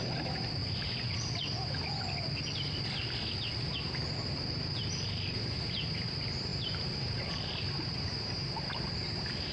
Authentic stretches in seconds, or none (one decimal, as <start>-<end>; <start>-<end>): 0.6-4.5